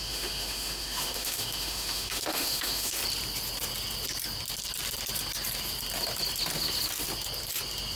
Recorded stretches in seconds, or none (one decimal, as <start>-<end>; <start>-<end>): 3.0-8.0